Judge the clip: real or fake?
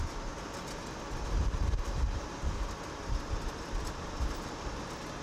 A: real